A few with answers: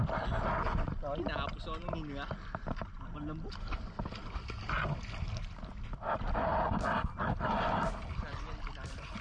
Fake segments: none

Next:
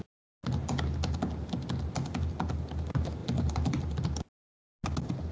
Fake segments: none

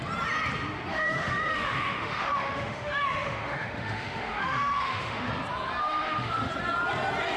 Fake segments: 0.9-5.3; 5.8-6.5